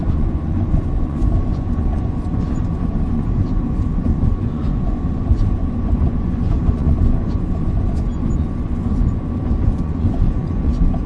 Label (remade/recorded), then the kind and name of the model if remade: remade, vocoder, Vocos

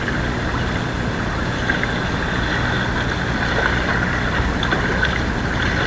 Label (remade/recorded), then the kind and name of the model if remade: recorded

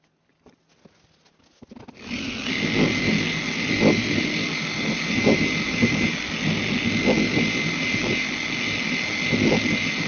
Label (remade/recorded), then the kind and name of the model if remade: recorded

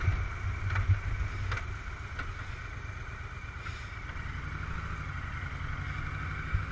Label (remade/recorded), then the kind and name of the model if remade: recorded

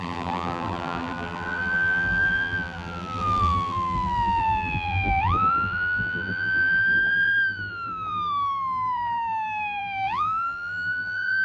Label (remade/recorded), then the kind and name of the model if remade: remade, vocoder, BigVGAN v2